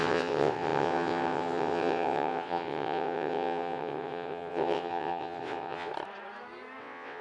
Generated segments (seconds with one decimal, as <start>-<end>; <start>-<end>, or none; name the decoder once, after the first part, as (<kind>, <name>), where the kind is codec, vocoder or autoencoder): 0.0-5.9 (vocoder, WaveNeXt); 6.8-7.2